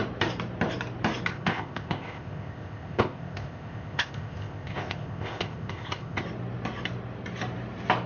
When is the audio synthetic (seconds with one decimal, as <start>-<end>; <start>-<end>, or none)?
1.3-6.2